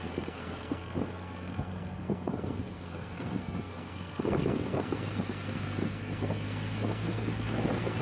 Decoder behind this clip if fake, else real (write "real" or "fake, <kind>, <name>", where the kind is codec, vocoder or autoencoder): fake, codec, SNAC